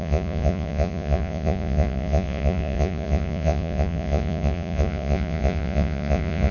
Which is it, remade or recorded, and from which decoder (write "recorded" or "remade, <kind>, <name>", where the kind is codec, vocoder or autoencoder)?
remade, vocoder, Vocos